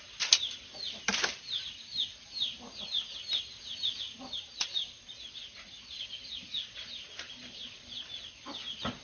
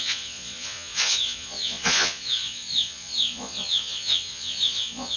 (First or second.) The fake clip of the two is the second